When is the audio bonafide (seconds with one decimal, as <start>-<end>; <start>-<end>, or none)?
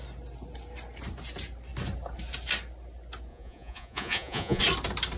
0.0-3.3; 4.6-5.2